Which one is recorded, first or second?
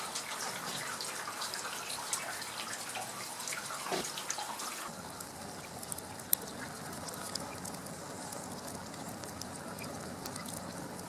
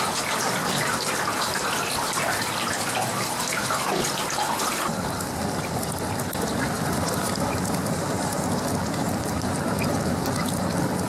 first